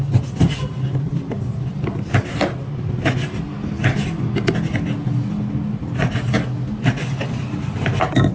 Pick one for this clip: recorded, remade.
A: recorded